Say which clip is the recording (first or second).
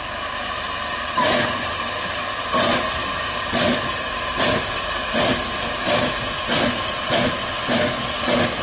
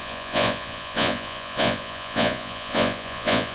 first